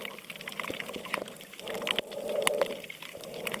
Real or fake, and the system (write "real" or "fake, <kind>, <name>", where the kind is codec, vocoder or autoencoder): fake, vocoder, BigVGAN v2